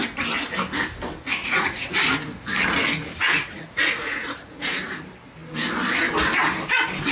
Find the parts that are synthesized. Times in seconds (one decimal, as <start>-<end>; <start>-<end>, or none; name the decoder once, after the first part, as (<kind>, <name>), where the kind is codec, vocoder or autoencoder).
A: 1.4-1.9 (vocoder, Vocos); 3.3-5.0